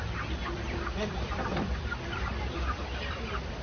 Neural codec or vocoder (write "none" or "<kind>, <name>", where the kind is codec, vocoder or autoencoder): vocoder, BigVGAN v2